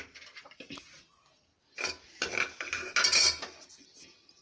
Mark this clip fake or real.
real